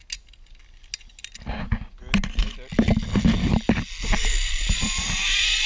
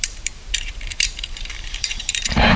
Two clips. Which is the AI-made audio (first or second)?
second